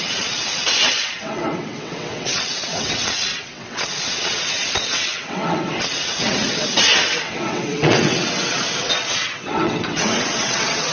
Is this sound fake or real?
fake